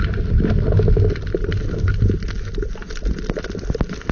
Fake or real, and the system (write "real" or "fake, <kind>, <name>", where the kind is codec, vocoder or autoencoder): real